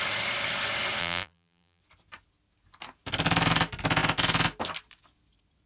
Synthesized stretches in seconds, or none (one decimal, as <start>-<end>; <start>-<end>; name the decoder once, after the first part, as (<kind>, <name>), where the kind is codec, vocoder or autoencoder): 1.0-1.8 (vocoder, BigVGAN v2)